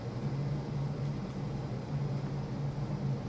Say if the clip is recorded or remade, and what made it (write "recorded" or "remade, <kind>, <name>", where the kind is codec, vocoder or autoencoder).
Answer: recorded